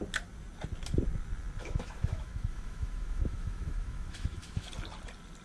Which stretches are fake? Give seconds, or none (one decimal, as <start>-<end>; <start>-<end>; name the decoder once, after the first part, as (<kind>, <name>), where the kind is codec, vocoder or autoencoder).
1.6-4.7 (autoencoder, DAC-VAE)